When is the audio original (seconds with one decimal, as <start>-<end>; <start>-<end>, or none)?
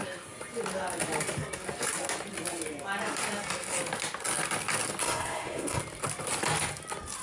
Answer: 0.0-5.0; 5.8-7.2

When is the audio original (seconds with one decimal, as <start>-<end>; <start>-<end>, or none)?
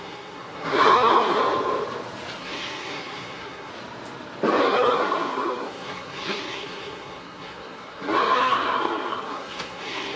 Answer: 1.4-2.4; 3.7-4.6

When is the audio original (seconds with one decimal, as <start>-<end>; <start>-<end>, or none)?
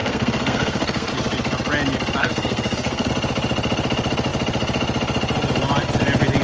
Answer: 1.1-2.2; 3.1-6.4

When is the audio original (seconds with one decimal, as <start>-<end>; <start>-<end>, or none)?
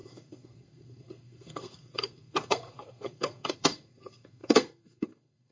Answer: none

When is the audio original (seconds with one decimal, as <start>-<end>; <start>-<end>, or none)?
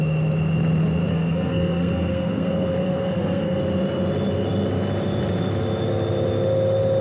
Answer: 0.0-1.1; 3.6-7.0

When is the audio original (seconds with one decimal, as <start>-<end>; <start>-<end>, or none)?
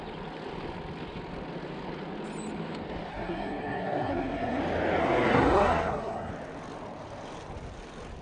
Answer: 0.0-3.1; 4.6-5.0; 6.3-8.2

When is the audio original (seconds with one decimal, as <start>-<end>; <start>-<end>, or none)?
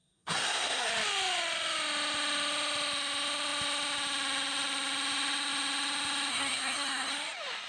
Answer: 0.9-6.3; 7.1-7.7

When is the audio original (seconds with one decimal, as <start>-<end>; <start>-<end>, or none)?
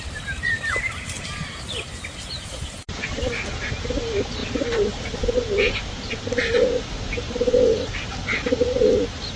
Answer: 0.0-9.4